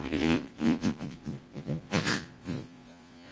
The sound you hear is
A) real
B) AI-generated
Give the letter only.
B